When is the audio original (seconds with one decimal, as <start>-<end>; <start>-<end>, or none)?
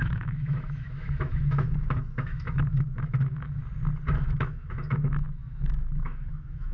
3.6-4.3